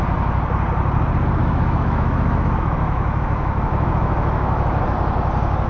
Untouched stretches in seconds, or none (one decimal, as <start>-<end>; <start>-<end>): 0.0-1.4; 4.8-5.7